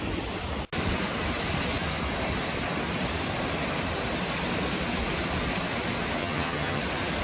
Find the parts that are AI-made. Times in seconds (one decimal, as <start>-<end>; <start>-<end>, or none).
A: 6.2-6.8